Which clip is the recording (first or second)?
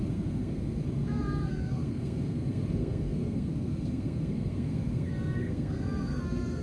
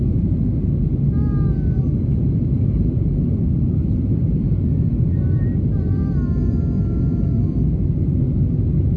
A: second